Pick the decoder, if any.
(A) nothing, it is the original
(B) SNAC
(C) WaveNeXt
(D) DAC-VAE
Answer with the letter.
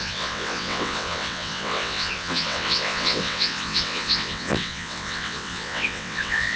C